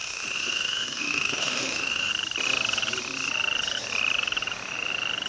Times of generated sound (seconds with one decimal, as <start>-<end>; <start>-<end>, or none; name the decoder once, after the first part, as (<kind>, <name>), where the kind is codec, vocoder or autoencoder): 0.0-2.1 (autoencoder, DAC-VAE)